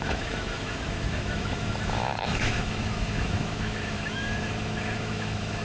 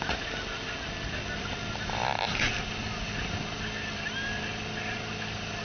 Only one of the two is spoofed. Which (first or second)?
first